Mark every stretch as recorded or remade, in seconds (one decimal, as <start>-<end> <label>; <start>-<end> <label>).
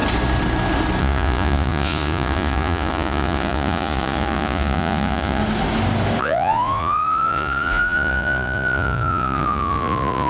0.0-1.0 recorded; 1.0-5.4 remade; 5.4-6.2 recorded; 6.2-10.3 remade